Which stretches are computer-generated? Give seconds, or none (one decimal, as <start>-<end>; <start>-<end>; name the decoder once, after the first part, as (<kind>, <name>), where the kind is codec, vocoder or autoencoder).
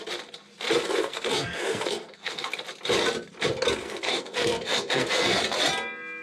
1.0-2.5 (codec, SNAC); 3.8-5.4